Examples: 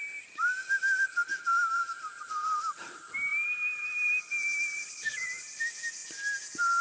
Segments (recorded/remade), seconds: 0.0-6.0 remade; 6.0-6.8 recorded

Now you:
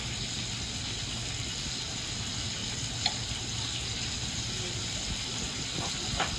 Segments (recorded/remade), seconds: 0.0-6.4 recorded

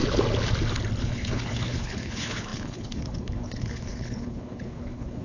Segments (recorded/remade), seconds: 0.0-1.0 recorded; 1.0-5.2 remade

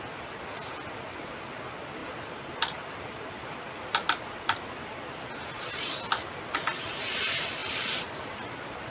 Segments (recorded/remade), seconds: 0.0-2.0 recorded; 2.0-5.3 remade; 5.3-7.6 recorded; 7.6-8.9 remade

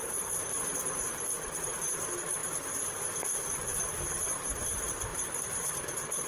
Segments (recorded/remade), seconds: 0.0-0.6 remade; 0.6-5.1 recorded; 5.1-6.3 remade

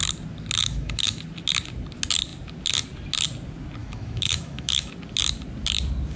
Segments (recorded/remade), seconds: 0.0-0.6 recorded; 0.6-1.2 remade; 1.2-3.8 recorded; 3.8-4.9 remade; 4.9-6.2 recorded

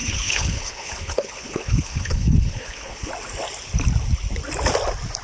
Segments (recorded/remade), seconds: 0.0-3.1 remade; 3.1-5.2 recorded